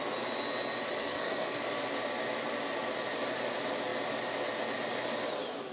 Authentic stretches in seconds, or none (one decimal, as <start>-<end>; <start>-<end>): 0.0-1.0; 1.6-5.7